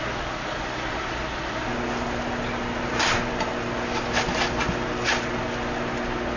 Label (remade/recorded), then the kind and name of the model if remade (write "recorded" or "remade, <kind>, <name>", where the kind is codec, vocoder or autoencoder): recorded